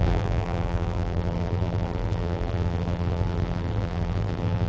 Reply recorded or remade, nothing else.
remade